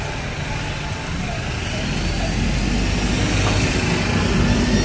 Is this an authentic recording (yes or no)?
yes